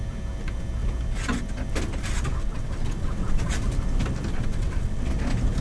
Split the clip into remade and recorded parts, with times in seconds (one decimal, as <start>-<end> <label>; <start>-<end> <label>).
0.0-2.4 recorded; 2.4-3.5 remade; 3.5-4.3 recorded; 4.3-5.0 remade; 5.0-5.6 recorded